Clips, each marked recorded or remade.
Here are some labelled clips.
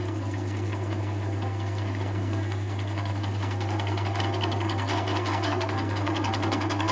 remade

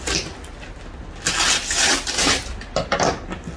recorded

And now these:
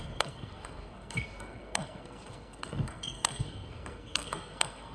remade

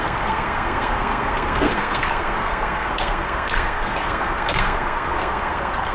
remade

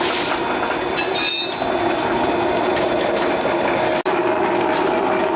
recorded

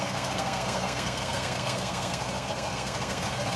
remade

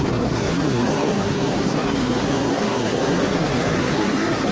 remade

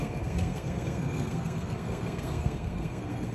remade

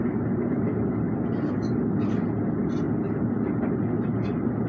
recorded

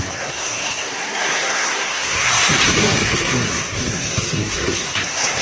remade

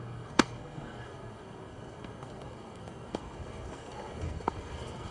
remade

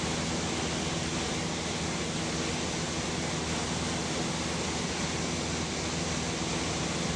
recorded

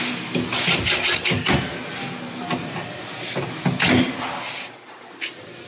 recorded